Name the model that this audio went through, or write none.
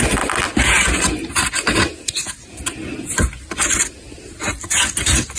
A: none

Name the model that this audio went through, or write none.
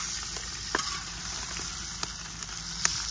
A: none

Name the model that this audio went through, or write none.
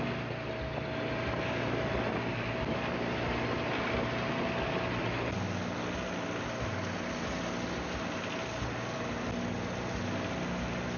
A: none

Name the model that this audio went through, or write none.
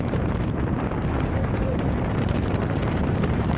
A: vocoder, BigVGAN v2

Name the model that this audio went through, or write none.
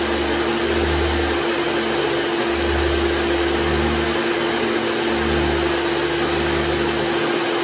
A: none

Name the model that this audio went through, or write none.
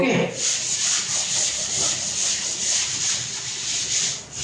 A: none